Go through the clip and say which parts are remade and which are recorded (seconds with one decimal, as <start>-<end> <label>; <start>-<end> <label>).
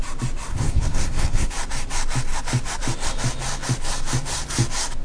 0.0-0.5 recorded; 0.5-1.5 remade; 1.5-5.0 recorded